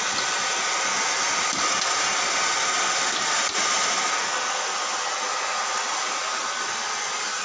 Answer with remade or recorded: recorded